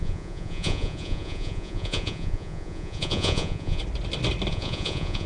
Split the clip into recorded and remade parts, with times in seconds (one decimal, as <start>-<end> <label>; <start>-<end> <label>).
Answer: 0.0-3.8 remade; 3.8-4.5 recorded; 4.5-5.3 remade